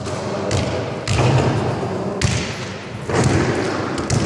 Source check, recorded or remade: recorded